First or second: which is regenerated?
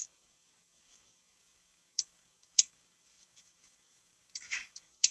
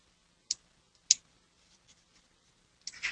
first